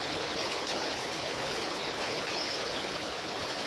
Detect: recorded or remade remade